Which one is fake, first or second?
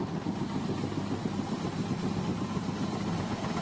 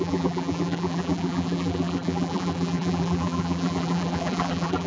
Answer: second